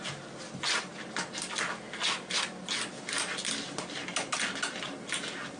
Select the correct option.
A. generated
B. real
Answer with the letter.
B